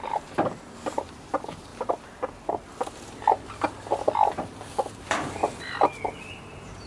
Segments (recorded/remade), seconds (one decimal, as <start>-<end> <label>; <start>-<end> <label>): 0.0-1.7 remade; 1.7-4.9 recorded; 4.9-5.4 remade; 5.4-6.9 recorded